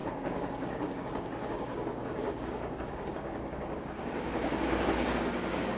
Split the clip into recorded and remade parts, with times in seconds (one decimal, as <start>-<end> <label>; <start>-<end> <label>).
0.0-5.8 remade